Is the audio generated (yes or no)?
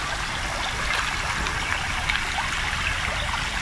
no